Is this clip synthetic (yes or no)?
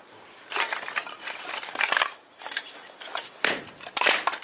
no